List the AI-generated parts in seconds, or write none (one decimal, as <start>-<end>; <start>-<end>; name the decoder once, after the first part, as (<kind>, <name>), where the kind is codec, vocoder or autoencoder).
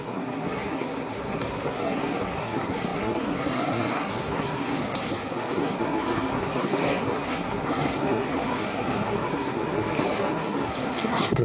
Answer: 0.0-11.4 (codec, SNAC)